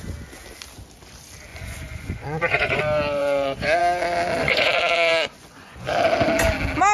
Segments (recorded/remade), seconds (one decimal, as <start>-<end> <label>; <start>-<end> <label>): 0.0-1.5 recorded; 1.5-2.8 remade; 2.8-3.2 recorded; 3.2-3.8 remade; 3.8-4.4 recorded; 4.4-5.9 remade; 5.9-6.9 recorded